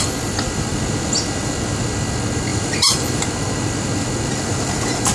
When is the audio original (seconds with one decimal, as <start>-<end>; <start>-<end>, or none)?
0.0-2.5; 3.2-5.1